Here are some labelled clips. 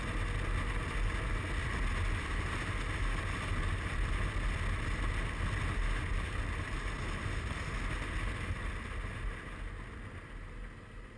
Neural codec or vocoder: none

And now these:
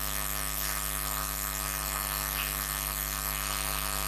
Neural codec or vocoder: none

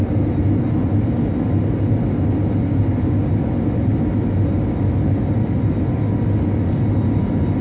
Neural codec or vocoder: none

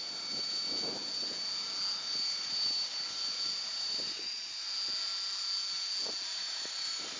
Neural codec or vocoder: none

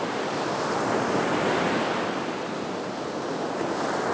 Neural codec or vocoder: none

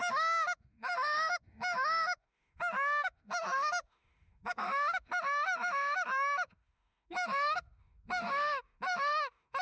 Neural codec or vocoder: autoencoder, DAC-VAE